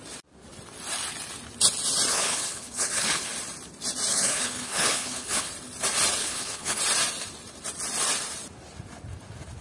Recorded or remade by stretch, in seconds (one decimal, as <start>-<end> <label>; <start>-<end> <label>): 0.0-2.1 recorded; 2.1-3.3 remade; 3.3-4.1 recorded; 4.1-5.5 remade; 5.5-6.2 recorded; 6.2-6.8 remade; 6.8-9.6 recorded